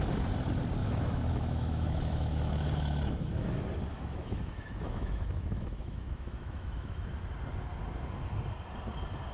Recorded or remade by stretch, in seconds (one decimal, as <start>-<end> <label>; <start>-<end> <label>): 0.0-0.8 recorded; 0.8-3.5 remade; 3.5-3.9 recorded; 3.9-7.1 remade; 7.1-9.3 recorded